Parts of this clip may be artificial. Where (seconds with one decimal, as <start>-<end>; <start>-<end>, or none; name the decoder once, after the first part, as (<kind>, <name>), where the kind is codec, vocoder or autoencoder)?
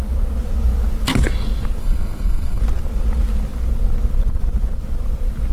1.8-2.6 (codec, SNAC)